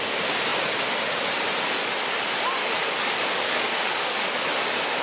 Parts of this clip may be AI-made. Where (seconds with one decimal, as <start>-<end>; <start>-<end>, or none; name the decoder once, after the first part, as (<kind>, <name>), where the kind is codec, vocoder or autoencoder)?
2.6-4.5 (codec, DAC)